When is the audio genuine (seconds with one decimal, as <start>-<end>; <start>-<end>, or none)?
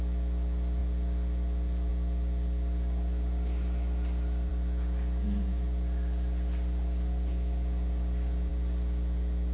0.0-9.5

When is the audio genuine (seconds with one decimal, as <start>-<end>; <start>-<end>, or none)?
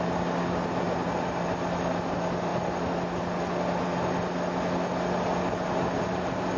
0.0-6.6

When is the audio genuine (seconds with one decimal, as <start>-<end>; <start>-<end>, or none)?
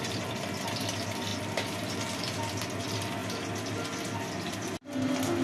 0.0-5.4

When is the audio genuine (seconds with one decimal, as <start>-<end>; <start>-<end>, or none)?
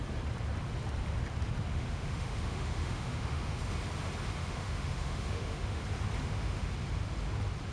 0.0-1.7; 3.6-4.4; 5.8-6.2; 6.7-7.7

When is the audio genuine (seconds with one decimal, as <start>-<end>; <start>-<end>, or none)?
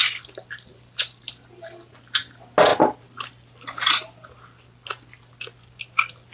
1.9-6.3